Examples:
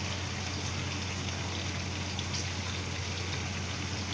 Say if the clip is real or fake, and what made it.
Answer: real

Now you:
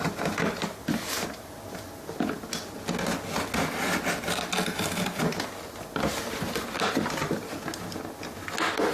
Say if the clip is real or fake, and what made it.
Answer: real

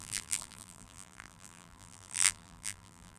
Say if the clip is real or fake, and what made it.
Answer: fake, vocoder, BigVGAN v2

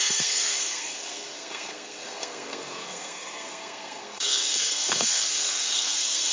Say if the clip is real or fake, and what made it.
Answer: fake, codec, SNAC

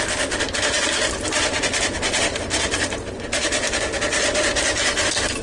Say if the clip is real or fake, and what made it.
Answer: real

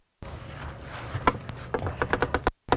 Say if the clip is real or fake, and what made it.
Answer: real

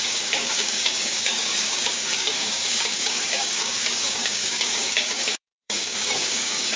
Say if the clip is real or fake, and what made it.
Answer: fake, codec, DAC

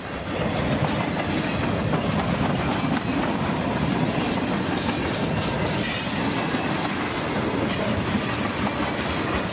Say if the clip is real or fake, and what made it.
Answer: real